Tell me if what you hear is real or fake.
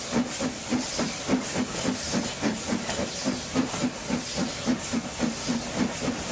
real